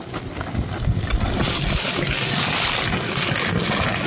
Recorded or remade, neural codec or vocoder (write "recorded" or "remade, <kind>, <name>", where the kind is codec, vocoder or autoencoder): recorded